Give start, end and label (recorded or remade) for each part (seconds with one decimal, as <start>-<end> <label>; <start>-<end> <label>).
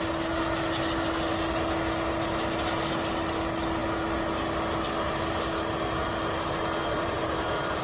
0.0-6.8 recorded; 6.8-7.8 remade